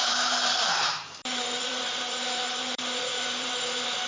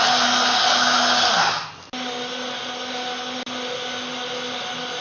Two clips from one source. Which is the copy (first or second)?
first